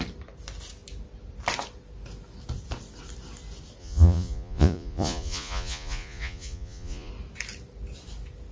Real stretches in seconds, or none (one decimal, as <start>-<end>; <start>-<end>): 0.0-3.8; 7.1-8.5